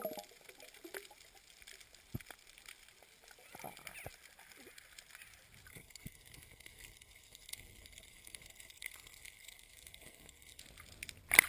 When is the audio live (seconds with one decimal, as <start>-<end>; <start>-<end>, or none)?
0.0-5.7; 10.6-11.5